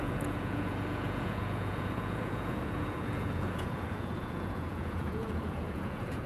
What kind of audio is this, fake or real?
fake